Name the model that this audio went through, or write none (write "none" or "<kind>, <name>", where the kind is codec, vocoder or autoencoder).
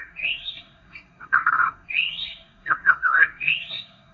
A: codec, SNAC